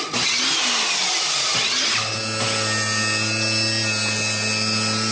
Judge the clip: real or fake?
real